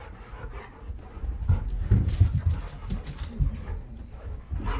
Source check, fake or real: real